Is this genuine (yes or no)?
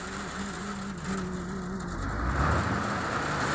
yes